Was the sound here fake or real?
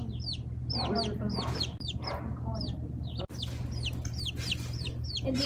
real